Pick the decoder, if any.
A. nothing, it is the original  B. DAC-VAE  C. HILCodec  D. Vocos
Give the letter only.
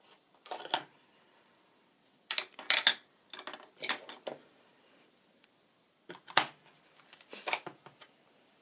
A